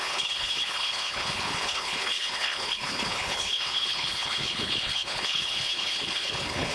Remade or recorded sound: remade